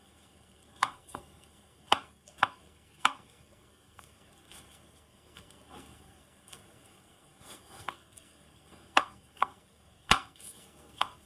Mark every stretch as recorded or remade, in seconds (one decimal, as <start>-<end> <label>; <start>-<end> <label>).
0.0-11.3 remade